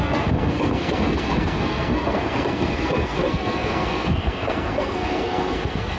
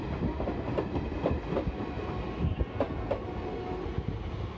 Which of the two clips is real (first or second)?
second